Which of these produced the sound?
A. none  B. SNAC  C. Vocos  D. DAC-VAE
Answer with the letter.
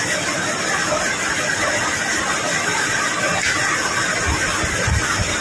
A